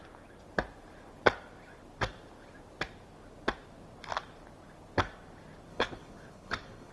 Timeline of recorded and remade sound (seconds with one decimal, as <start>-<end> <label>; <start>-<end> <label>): 0.0-5.7 recorded; 5.7-6.9 remade

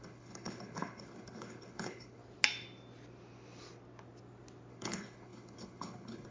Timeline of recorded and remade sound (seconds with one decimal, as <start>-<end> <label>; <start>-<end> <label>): 0.0-2.2 remade; 2.2-4.7 recorded; 4.7-6.3 remade

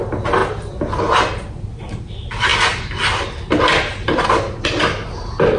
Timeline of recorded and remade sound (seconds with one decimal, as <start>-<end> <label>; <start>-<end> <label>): 0.0-5.6 recorded

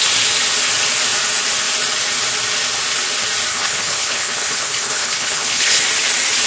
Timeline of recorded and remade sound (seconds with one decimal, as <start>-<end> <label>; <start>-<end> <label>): 0.0-3.5 recorded; 3.5-5.8 remade; 5.8-6.5 recorded

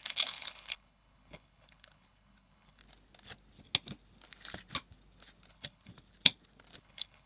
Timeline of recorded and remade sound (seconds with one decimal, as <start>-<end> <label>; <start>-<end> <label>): 0.0-2.8 remade; 2.8-5.5 recorded; 5.5-5.9 remade; 5.9-6.8 recorded; 6.8-7.3 remade

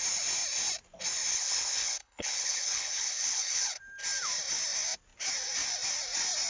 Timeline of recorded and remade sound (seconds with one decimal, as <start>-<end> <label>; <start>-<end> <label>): 0.0-1.3 recorded; 1.3-3.8 remade; 3.8-6.5 recorded

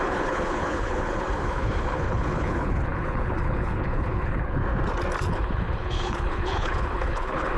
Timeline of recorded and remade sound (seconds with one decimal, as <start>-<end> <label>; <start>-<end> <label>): 0.0-4.6 remade; 4.6-5.3 recorded; 5.3-7.6 remade